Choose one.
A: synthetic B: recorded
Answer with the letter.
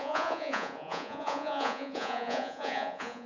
A